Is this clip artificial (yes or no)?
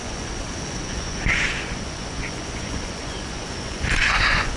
yes